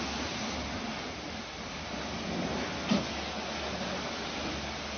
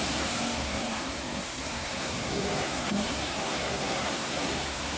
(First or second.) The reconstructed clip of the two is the second